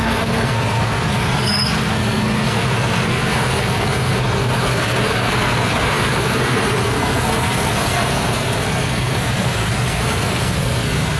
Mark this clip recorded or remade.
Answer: remade